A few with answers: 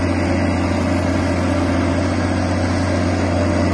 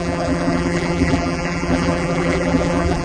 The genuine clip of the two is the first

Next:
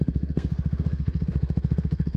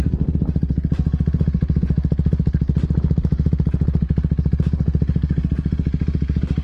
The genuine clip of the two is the second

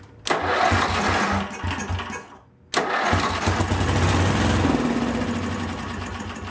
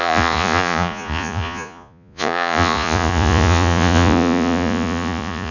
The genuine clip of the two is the first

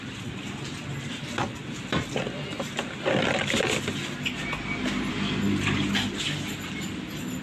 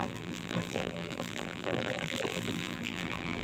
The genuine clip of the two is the first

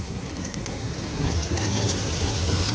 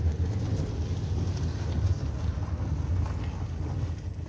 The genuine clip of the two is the second